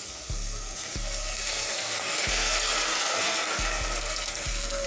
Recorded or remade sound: remade